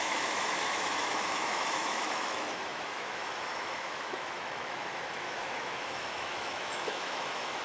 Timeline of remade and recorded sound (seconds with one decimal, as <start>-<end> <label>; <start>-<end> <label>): 0.0-7.6 remade